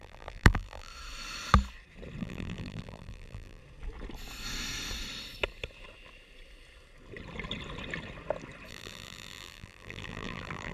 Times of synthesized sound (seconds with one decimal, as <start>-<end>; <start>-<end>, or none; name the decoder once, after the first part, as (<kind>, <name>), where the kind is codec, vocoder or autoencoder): 0.0-0.9 (vocoder, BigVGAN v2); 2.2-3.6; 8.7-10.7